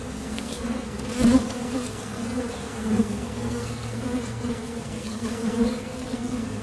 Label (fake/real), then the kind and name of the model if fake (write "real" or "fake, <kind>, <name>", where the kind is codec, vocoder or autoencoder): fake, codec, SNAC